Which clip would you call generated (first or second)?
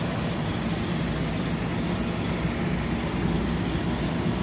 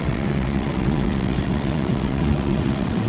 second